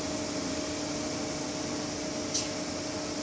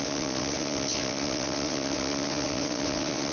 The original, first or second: first